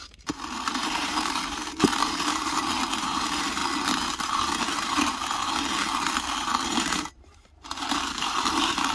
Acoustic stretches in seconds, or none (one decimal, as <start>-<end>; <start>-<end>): 3.6-4.2; 5.3-6.7